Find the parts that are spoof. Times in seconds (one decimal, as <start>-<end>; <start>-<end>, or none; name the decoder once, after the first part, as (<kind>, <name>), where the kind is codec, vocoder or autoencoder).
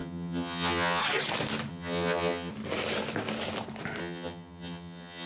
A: 0.0-1.0 (vocoder, HiFi-GAN); 1.7-2.5; 4.0-5.3